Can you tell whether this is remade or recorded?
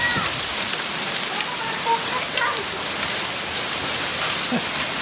recorded